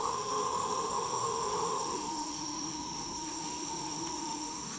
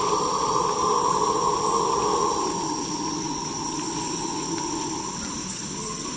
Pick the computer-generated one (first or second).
first